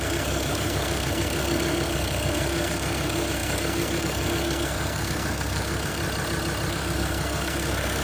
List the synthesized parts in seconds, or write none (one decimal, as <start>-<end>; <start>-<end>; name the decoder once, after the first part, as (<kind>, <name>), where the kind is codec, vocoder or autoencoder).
0.0-6.0 (codec, SNAC); 6.7-8.0